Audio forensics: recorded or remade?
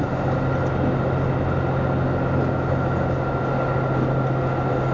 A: recorded